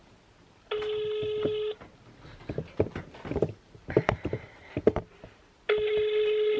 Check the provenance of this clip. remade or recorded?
recorded